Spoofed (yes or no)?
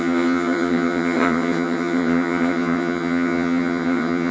yes